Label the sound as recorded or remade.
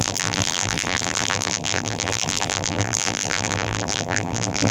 remade